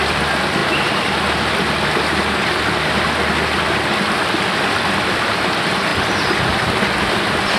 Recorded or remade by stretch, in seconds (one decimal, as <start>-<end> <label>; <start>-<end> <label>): 0.0-0.6 remade; 0.6-5.2 recorded; 5.2-5.9 remade; 5.9-7.1 recorded; 7.1-7.6 remade